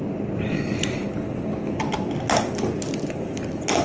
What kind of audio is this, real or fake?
real